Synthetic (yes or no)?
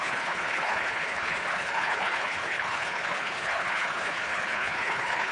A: yes